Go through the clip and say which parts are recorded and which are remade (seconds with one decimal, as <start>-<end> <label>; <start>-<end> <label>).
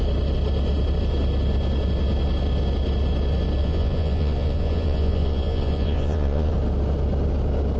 0.0-3.6 recorded; 3.6-6.5 remade; 6.5-7.8 recorded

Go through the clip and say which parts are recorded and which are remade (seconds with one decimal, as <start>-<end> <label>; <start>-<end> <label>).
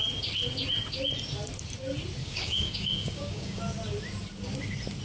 0.0-2.2 recorded; 2.2-3.6 remade; 3.6-5.0 recorded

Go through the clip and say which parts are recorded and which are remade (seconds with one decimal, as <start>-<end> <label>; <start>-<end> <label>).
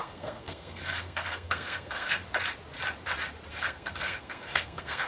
0.0-2.2 remade; 2.2-3.5 recorded; 3.5-5.1 remade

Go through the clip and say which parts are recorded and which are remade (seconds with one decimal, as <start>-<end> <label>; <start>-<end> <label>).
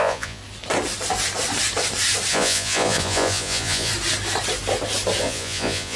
0.0-0.4 remade; 0.4-2.3 recorded; 2.3-3.9 remade; 3.9-5.2 recorded; 5.2-6.0 remade